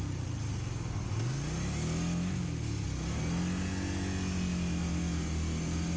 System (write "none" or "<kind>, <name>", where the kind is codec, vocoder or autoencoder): none